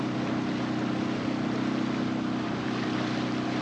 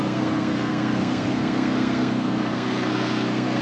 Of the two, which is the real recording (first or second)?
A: first